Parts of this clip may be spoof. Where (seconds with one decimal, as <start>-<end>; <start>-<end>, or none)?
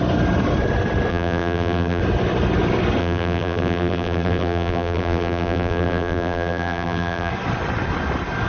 1.1-2.0; 3.0-7.3